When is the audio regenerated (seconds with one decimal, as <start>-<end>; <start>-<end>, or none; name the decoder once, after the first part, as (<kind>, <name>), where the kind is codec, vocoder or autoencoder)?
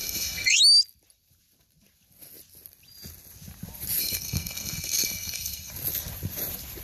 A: 0.0-0.6 (codec, SNAC); 4.0-5.7